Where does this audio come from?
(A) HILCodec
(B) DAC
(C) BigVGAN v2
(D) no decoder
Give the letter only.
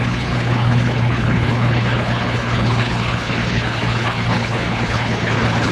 A